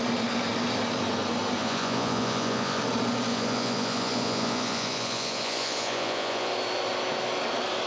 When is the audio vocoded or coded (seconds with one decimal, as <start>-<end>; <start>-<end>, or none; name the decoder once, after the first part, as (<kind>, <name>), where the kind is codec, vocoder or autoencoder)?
1.6-2.8 (vocoder, Vocos); 3.3-6.5